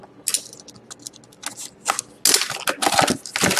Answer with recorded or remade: recorded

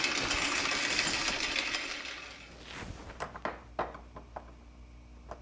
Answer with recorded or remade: recorded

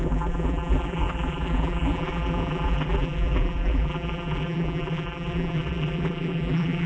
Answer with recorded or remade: remade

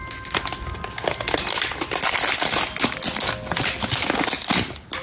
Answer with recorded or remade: recorded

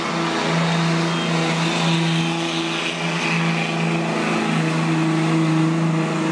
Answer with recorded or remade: recorded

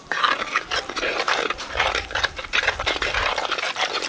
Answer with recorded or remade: remade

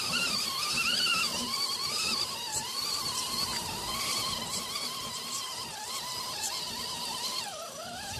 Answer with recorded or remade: remade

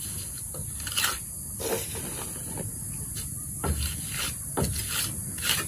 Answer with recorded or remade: recorded